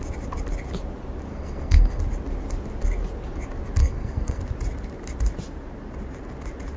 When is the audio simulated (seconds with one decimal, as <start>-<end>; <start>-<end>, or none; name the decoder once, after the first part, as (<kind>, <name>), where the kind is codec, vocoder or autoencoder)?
1.3-2.0 (codec, SNAC); 3.8-4.4